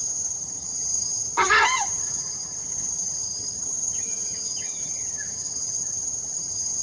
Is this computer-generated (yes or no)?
yes